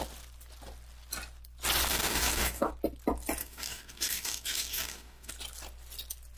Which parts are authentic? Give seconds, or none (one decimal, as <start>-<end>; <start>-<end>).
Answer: 0.0-1.9; 2.7-3.4; 5.3-6.4